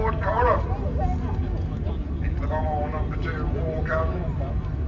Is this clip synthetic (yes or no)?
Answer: no